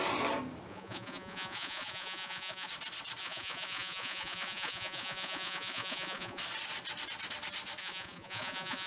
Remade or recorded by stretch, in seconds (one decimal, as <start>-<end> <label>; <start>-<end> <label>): 0.0-0.7 recorded; 0.7-2.7 remade; 2.7-3.2 recorded; 3.2-6.4 remade; 6.4-7.8 recorded; 7.8-8.9 remade